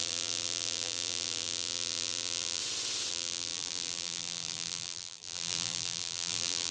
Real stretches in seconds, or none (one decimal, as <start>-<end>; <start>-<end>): 2.6-3.1